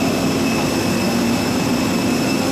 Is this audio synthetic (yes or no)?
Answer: no